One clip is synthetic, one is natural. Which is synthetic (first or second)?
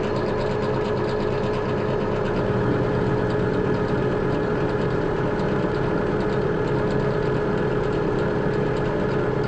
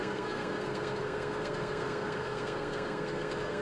second